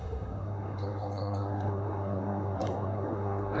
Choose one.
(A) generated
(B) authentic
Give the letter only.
A